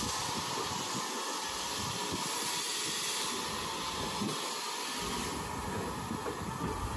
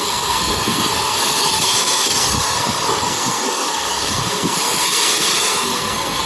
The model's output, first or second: second